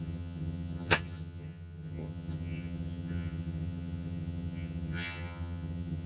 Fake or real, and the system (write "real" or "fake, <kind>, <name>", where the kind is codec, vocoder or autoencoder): fake, vocoder, HiFi-GAN